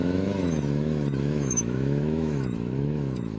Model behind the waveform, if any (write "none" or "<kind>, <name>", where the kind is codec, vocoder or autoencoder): autoencoder, DAC-VAE